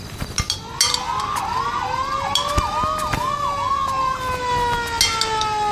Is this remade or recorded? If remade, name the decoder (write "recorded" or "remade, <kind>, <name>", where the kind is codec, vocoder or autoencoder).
recorded